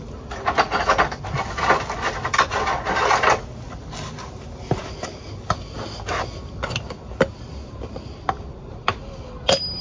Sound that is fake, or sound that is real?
real